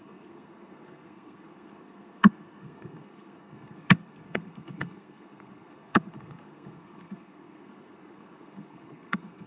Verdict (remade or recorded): remade